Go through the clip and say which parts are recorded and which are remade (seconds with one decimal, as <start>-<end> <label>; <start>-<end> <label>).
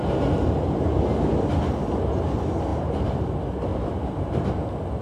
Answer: 0.0-2.7 recorded; 2.7-3.3 remade; 3.3-3.7 recorded; 3.7-4.5 remade; 4.5-5.0 recorded